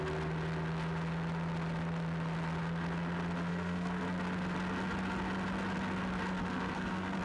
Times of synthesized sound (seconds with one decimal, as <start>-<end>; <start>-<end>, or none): 3.5-4.0; 6.4-7.2